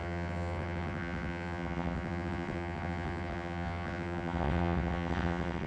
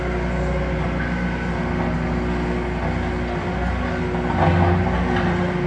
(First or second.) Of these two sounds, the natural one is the second